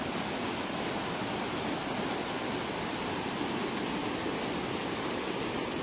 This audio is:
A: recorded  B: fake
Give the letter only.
A